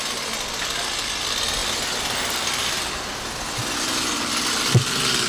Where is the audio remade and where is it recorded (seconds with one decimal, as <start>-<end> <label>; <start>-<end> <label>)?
0.0-5.3 recorded